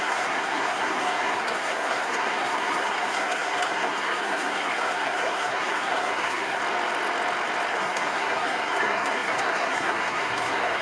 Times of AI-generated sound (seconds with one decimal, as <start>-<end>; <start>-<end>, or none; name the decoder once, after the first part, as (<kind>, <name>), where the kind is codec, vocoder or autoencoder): 0.0-6.6 (codec, SNAC); 7.7-10.8